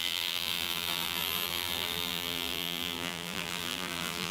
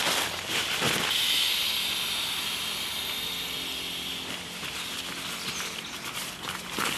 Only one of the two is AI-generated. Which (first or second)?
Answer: first